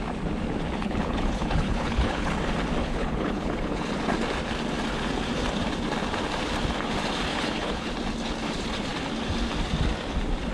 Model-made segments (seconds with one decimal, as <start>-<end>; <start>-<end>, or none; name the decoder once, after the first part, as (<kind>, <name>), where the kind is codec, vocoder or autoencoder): 0.8-2.3 (codec, HILCodec); 2.8-3.9; 7.3-7.9